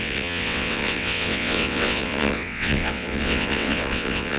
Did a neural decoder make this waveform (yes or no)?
yes